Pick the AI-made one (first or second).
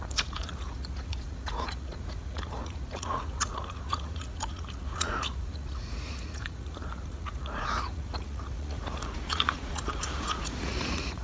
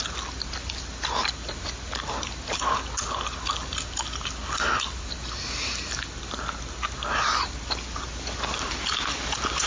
first